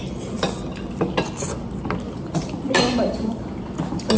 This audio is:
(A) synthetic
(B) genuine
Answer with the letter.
B